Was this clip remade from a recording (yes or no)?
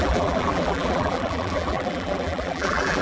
yes